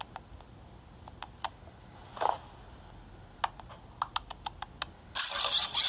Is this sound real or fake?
real